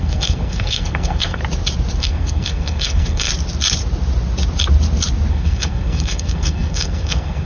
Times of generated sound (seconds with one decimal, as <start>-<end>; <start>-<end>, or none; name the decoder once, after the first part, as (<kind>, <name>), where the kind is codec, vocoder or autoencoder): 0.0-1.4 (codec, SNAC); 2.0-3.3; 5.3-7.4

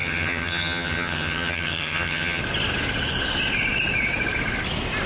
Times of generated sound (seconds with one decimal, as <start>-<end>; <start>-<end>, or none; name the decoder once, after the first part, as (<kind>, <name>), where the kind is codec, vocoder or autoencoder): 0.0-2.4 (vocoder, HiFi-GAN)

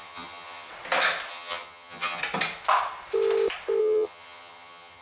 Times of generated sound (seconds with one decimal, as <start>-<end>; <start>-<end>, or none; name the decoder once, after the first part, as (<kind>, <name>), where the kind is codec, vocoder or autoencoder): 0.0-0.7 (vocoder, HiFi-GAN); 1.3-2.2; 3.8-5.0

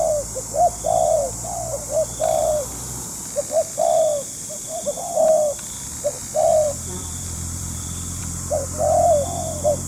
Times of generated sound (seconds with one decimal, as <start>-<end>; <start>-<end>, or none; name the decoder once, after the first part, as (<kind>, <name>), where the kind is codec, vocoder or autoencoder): 2.4-3.4 (vocoder, BigVGAN v2); 6.2-8.2

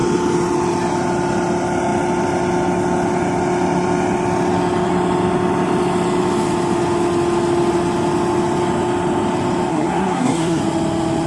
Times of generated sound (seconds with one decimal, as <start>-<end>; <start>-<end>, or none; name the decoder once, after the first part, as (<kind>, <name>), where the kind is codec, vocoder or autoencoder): 9.7-10.6 (codec, SNAC)

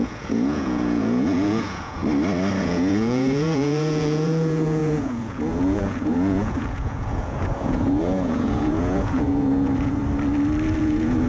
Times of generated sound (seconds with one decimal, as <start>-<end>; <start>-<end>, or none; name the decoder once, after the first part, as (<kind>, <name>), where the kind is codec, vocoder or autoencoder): 0.0-2.0 (vocoder, Vocos); 2.6-10.0; 10.8-11.3

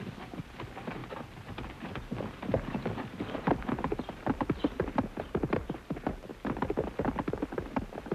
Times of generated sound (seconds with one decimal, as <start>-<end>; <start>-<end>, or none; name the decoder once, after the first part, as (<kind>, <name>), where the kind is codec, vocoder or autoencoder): none

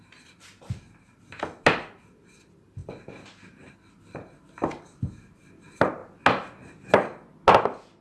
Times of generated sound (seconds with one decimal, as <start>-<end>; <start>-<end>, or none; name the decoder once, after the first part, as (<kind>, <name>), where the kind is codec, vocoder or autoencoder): none